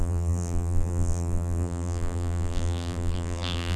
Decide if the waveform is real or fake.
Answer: fake